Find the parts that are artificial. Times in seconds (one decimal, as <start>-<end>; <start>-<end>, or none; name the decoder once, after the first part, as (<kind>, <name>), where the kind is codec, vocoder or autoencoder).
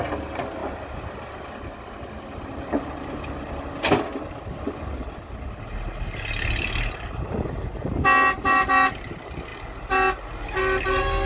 none